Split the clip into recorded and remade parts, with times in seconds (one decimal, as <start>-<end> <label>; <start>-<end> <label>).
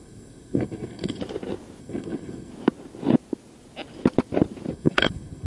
0.0-1.2 remade; 1.2-1.8 recorded; 1.8-2.5 remade; 2.5-4.7 recorded; 4.7-5.5 remade